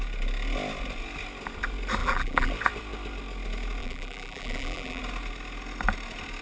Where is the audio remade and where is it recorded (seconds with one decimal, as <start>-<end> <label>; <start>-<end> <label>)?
0.0-2.0 recorded; 2.0-2.5 remade; 2.5-3.8 recorded; 3.8-5.0 remade; 5.0-6.4 recorded